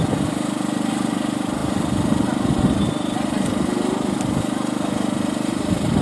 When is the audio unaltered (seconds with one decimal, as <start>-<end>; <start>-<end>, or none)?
none